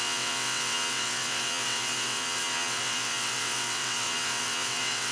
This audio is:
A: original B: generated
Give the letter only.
B